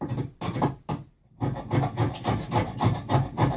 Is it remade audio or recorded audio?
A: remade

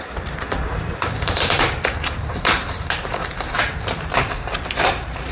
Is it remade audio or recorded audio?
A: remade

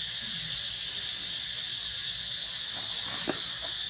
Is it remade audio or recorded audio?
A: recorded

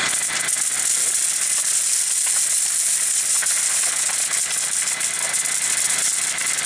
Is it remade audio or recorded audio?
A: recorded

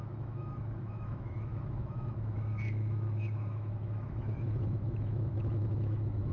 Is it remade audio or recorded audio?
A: remade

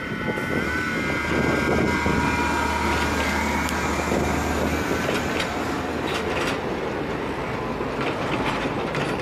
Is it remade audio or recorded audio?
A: recorded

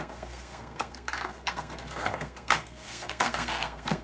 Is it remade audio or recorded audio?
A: remade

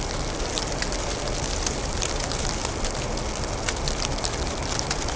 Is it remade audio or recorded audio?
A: recorded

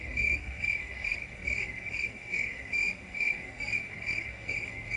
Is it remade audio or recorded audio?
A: remade